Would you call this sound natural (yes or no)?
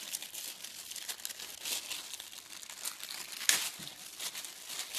yes